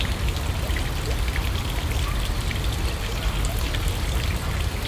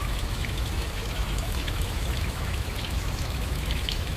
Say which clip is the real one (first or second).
first